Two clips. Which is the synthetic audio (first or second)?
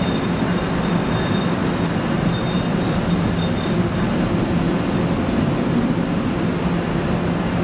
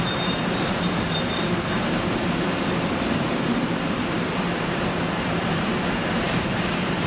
second